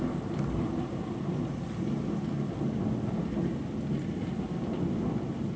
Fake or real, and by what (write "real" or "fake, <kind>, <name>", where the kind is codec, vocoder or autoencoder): real